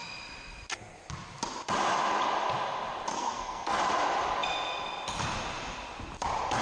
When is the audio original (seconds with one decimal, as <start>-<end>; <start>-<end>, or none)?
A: 0.0-3.1; 3.8-6.6